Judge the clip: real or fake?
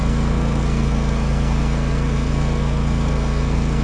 fake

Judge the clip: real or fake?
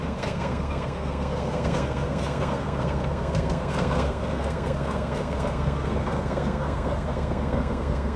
fake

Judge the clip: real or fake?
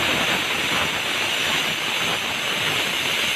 real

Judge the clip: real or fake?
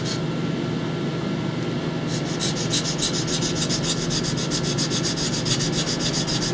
real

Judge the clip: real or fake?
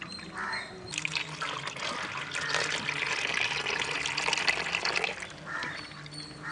real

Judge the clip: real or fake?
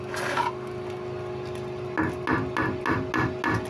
real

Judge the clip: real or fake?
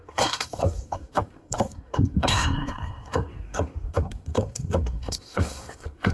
fake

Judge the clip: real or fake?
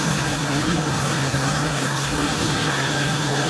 fake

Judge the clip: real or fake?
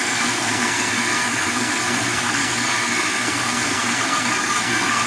fake